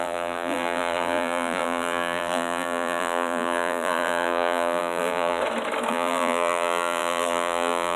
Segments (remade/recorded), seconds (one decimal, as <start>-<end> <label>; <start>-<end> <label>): 0.0-5.4 remade; 5.4-5.9 recorded; 5.9-8.0 remade